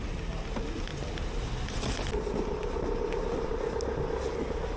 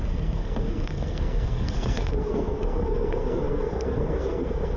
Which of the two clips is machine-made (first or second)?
second